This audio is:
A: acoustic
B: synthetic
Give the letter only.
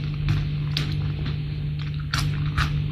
A